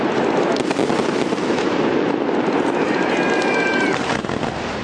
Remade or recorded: recorded